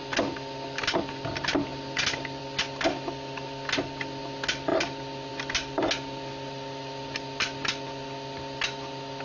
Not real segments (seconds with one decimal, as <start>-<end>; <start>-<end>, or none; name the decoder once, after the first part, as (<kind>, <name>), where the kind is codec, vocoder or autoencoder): none